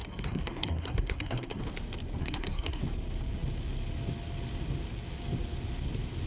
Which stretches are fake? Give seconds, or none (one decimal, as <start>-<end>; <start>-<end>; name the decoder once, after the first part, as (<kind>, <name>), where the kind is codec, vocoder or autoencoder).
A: 0.0-1.6 (codec, SNAC); 2.2-2.8